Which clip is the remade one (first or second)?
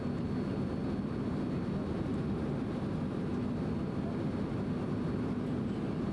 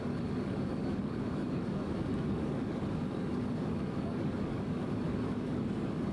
second